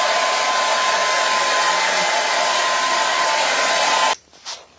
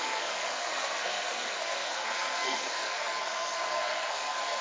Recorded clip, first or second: first